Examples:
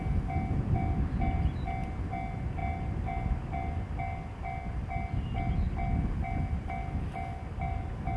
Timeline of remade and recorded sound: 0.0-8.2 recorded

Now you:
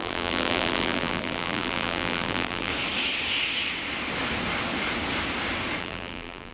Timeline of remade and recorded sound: 0.0-2.7 remade; 2.7-5.8 recorded; 5.8-6.5 remade

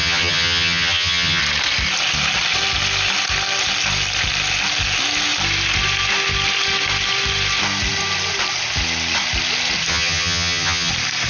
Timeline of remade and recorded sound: 0.0-1.4 remade; 1.4-9.9 recorded; 9.9-10.9 remade; 10.9-11.3 recorded

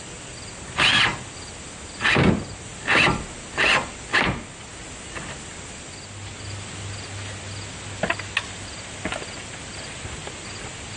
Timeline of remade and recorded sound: 0.0-11.0 recorded

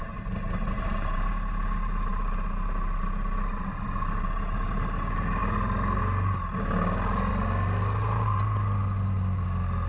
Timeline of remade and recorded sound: 0.0-9.9 recorded

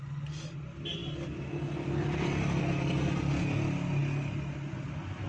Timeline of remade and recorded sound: 0.0-5.3 recorded

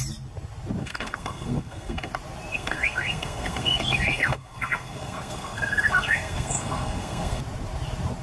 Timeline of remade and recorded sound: 0.0-0.8 recorded; 0.8-2.1 remade; 2.1-2.5 recorded; 2.5-7.4 remade; 7.4-8.2 recorded

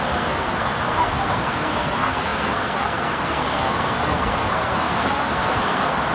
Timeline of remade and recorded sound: 0.0-6.1 remade